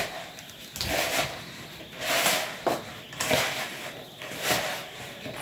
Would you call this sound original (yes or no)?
yes